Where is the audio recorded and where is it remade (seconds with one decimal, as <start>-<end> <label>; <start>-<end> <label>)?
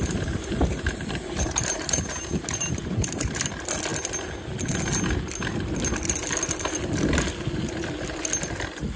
0.0-3.5 remade; 3.5-9.0 recorded